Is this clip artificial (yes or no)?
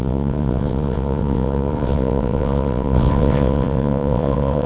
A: yes